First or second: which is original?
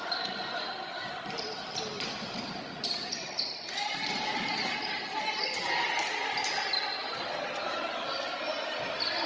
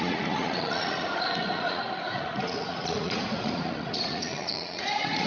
first